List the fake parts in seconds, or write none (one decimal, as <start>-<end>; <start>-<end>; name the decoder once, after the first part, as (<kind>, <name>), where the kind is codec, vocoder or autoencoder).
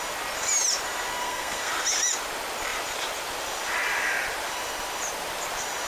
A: 1.2-1.7 (codec, SNAC)